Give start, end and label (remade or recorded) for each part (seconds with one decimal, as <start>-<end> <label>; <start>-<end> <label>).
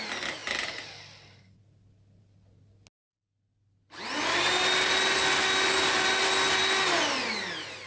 0.0-7.9 recorded